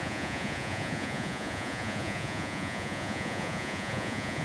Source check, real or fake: fake